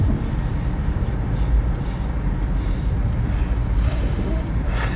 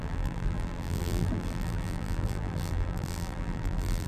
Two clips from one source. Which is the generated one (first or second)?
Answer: second